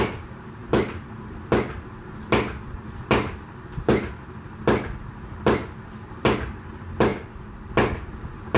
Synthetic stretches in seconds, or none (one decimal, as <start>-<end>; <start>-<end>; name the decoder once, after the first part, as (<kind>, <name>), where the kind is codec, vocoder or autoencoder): none